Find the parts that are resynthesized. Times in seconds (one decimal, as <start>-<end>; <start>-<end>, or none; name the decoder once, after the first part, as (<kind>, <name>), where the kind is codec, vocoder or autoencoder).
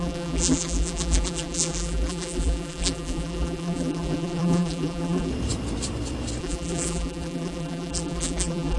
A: 0.0-5.3 (vocoder, BigVGAN v2); 6.4-8.8